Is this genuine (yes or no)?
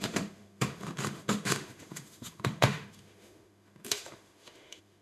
no